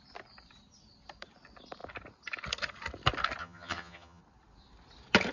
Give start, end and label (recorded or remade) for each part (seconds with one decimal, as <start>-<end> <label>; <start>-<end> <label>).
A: 0.0-3.4 recorded; 3.4-4.2 remade; 4.2-5.3 recorded